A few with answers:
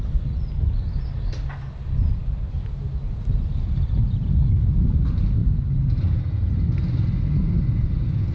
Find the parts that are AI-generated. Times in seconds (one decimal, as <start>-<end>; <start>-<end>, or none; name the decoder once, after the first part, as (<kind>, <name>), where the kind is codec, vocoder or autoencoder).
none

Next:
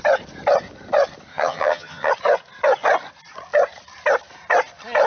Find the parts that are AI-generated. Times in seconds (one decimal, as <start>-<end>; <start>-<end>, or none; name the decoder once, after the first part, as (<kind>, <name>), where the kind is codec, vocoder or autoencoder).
1.3-2.1 (vocoder, HiFi-GAN)

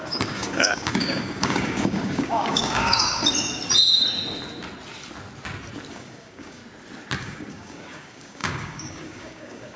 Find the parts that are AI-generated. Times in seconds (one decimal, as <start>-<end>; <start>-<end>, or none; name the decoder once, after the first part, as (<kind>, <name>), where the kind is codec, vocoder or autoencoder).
0.0-3.2 (codec, DAC); 5.9-6.6; 7.2-9.8